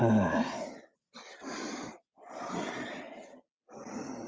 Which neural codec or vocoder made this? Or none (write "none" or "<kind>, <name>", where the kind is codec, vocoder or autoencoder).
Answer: none